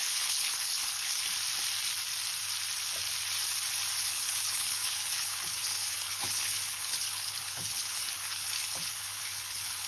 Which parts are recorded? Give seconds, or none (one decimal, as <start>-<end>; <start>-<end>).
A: 1.2-4.0